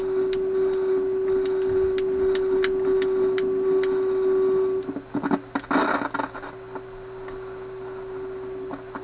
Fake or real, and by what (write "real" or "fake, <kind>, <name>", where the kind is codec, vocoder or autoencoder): real